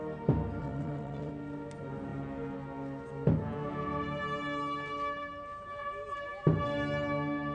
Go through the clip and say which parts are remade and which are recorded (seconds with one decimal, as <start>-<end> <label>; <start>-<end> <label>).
0.0-0.6 recorded; 0.6-1.3 remade; 1.3-7.5 recorded